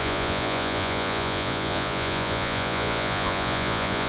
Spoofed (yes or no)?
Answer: yes